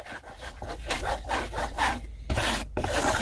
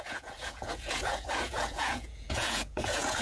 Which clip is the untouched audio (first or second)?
first